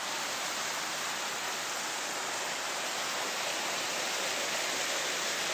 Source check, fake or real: real